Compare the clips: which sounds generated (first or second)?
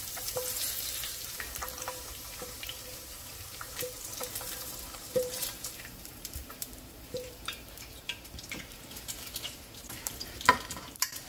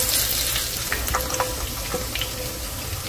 first